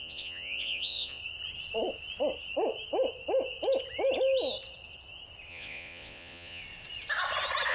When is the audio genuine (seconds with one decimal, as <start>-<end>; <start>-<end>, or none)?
1.2-5.5; 6.6-7.7